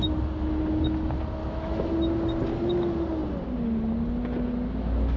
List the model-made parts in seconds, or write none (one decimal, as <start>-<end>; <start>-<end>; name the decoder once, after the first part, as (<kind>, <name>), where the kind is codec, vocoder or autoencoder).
1.4-1.9 (autoencoder, DAC-VAE)